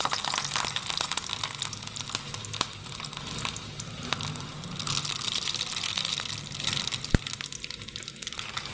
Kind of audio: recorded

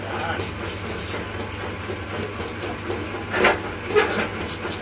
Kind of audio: recorded